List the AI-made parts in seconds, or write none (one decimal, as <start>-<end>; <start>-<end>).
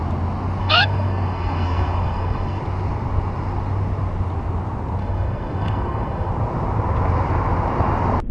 0.6-2.6; 5.0-6.3